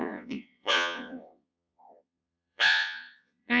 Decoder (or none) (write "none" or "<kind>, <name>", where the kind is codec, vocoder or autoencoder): vocoder, Vocos